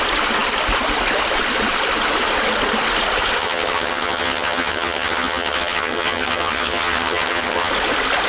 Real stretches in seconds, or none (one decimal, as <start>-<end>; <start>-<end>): 0.0-3.4; 7.7-8.3